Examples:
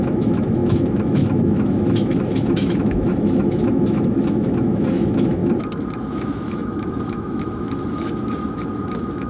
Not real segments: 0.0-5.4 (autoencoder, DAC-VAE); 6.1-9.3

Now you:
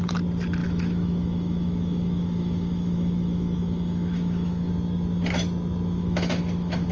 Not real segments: 0.6-4.7 (autoencoder, DAC-VAE); 6.0-6.9